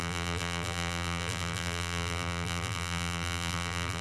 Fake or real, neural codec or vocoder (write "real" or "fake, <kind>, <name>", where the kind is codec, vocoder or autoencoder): fake, vocoder, BigVGAN v2